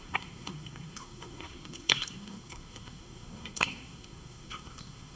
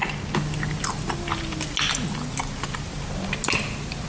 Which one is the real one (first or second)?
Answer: second